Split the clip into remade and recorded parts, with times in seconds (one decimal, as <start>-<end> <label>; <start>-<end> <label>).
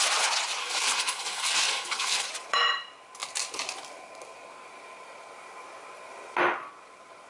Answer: 0.0-0.6 recorded; 0.6-2.3 remade; 2.3-7.3 recorded